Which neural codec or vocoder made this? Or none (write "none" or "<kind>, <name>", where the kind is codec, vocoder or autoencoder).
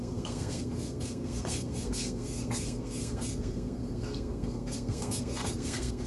codec, SNAC